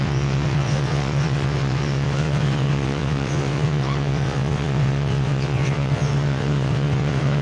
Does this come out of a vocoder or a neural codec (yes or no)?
yes